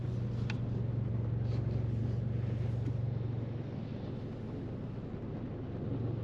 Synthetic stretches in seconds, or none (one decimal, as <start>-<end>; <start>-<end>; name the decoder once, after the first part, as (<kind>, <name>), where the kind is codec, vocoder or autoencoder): none